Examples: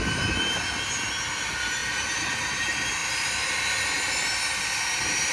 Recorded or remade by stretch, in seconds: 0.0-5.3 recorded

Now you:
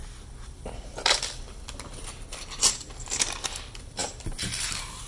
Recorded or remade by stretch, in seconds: 0.0-5.1 remade

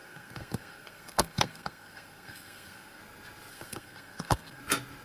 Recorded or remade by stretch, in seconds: 0.0-3.0 remade; 3.0-3.5 recorded; 3.5-4.6 remade; 4.6-5.0 recorded

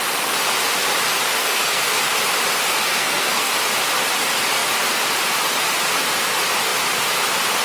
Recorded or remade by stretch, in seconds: 0.0-1.4 recorded; 1.4-2.0 remade; 2.0-2.9 recorded; 2.9-3.5 remade; 3.5-7.6 recorded

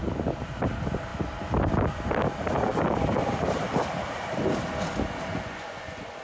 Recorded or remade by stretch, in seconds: 0.0-5.3 recorded; 5.3-6.2 remade

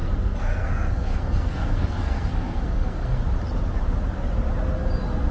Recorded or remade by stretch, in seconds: 0.0-3.2 remade; 3.2-5.3 recorded

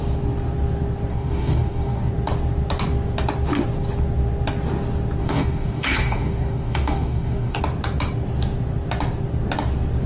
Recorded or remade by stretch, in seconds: 0.0-1.1 recorded; 1.1-2.1 remade; 2.1-5.2 recorded; 5.2-7.6 remade; 7.6-10.1 recorded